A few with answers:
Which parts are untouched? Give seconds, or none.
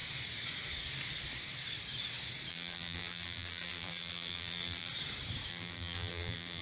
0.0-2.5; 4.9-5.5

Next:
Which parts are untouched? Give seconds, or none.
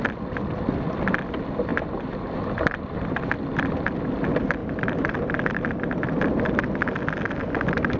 0.0-1.7; 3.3-4.6; 6.0-8.0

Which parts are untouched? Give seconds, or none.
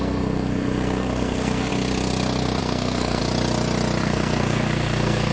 1.7-2.6; 3.2-4.0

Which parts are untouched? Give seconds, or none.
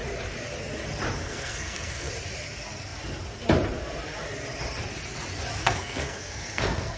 0.0-1.2; 2.1-5.6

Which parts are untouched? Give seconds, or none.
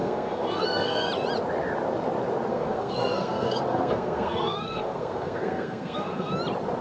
1.1-2.5; 6.3-6.8